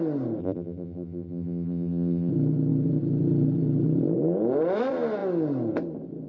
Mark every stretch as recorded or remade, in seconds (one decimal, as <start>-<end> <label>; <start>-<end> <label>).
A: 0.0-0.4 recorded; 0.4-2.3 remade; 2.3-6.3 recorded